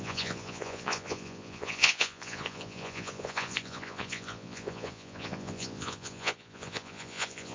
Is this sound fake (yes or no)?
yes